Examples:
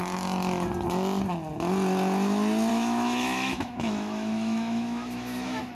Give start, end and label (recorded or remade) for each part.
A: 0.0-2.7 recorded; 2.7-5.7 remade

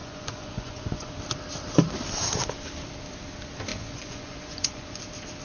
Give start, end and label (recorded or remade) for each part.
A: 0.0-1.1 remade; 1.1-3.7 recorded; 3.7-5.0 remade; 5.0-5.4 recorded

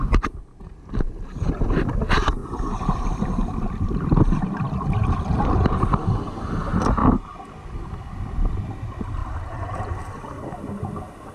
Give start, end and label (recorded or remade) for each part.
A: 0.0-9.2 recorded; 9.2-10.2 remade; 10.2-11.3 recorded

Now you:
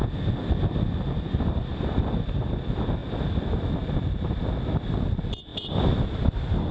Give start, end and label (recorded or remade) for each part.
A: 0.0-3.0 recorded; 3.0-4.4 remade; 4.4-5.5 recorded; 5.5-6.2 remade; 6.2-6.7 recorded

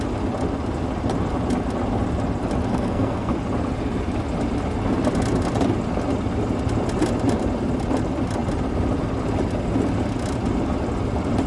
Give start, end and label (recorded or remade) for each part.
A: 0.0-2.7 recorded; 2.7-3.3 remade; 3.3-11.5 recorded